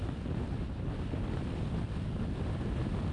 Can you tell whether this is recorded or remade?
recorded